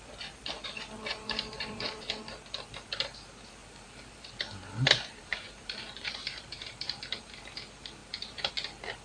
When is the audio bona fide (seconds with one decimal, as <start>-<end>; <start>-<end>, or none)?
0.0-1.1; 2.3-3.6; 7.2-8.0; 8.5-9.0